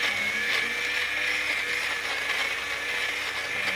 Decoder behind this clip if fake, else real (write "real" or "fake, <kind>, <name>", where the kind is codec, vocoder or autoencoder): real